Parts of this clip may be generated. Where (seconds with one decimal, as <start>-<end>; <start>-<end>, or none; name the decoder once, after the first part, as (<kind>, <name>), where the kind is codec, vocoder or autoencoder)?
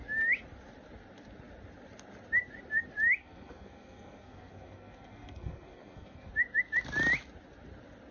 3.2-6.3 (codec, SNAC)